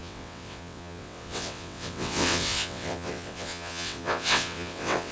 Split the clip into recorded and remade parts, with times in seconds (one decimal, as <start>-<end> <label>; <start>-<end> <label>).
0.0-5.1 remade